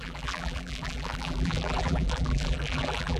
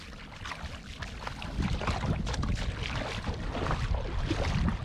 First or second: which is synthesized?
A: first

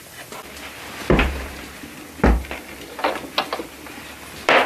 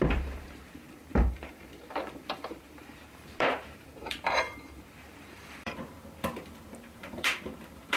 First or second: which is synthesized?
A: second